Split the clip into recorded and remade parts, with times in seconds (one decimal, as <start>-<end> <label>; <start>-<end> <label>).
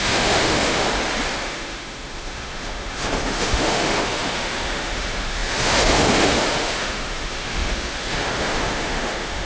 0.0-0.8 remade; 0.8-1.4 recorded; 1.4-9.5 remade